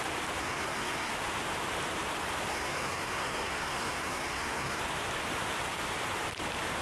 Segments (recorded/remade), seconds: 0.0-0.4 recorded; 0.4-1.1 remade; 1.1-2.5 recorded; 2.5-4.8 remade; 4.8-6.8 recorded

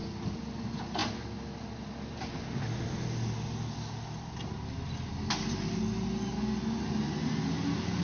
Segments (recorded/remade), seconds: 0.0-8.0 recorded

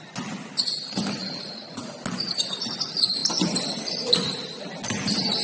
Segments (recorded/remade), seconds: 0.0-1.2 recorded; 1.2-1.8 remade; 1.8-5.4 recorded

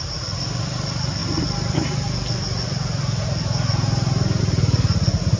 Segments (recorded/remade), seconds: 0.0-5.4 recorded